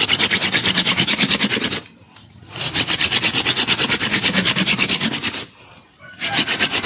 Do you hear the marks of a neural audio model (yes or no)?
no